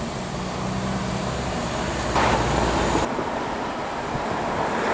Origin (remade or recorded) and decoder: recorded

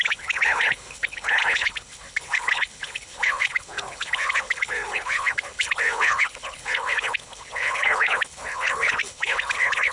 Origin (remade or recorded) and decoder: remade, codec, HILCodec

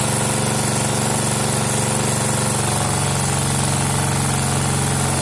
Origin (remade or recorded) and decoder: recorded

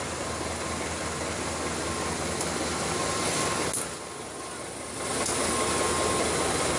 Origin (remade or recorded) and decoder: recorded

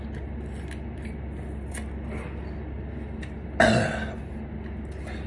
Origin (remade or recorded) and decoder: recorded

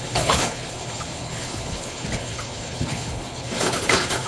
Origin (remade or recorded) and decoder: remade, codec, HILCodec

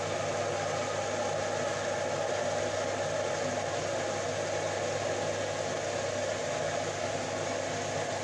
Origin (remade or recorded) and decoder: recorded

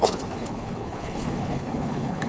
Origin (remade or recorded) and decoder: remade, codec, HILCodec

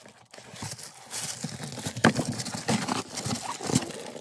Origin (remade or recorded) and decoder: recorded